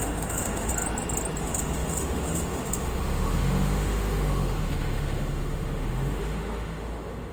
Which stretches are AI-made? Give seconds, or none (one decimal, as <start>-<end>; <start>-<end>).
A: 0.0-0.7; 1.4-7.3